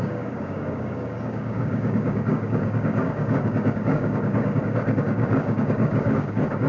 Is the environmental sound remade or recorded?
remade